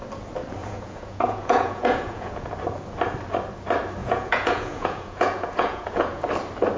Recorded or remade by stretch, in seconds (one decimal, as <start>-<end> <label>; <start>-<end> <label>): 0.0-0.6 recorded; 0.6-2.5 remade; 2.5-4.0 recorded; 4.0-6.2 remade; 6.2-6.8 recorded